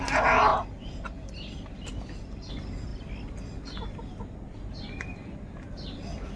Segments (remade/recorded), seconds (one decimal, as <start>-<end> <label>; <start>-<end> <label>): 0.0-6.4 recorded